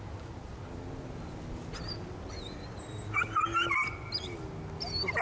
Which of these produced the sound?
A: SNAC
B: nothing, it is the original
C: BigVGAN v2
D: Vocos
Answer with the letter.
B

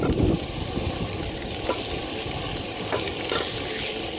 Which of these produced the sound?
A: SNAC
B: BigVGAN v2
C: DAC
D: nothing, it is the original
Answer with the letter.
D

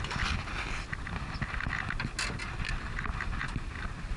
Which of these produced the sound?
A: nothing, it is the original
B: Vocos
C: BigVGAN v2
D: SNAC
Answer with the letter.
A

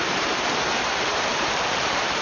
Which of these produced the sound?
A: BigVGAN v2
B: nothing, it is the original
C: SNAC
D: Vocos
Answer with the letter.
A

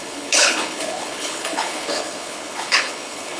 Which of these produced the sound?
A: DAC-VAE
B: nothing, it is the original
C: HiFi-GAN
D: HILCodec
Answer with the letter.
D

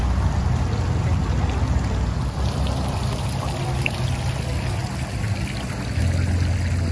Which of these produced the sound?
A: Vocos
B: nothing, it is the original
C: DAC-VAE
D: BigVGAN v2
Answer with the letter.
B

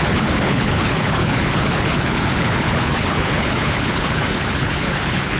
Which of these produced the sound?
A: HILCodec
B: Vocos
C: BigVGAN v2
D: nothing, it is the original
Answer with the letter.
A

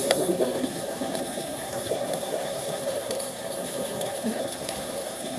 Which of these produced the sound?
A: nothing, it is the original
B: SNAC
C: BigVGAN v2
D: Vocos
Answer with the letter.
B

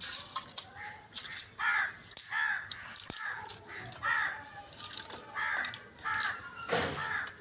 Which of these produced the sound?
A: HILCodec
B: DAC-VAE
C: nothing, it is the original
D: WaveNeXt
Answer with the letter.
C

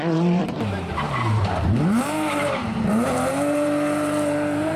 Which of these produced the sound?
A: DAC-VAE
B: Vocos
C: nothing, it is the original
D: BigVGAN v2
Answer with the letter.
D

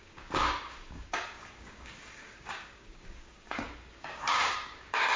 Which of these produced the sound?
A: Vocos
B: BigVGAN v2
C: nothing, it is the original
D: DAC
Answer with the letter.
D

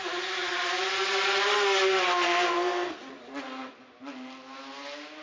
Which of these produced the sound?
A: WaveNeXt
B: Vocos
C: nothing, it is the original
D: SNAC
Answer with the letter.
C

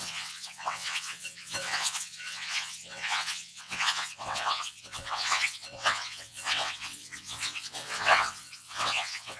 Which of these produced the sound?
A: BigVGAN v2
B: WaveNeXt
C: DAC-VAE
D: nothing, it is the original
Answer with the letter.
B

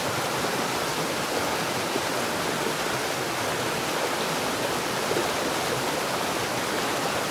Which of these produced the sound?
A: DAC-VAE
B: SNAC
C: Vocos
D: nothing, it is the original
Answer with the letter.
D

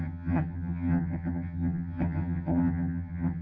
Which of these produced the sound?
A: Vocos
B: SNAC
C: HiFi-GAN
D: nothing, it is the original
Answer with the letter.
C